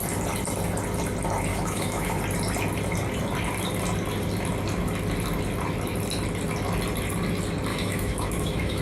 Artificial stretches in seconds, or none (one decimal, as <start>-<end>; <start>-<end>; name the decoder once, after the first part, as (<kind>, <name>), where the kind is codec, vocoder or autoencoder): 1.5-2.2 (autoencoder, DAC-VAE); 7.7-8.8